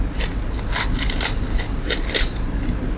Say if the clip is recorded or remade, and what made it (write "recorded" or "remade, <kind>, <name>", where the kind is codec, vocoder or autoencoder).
recorded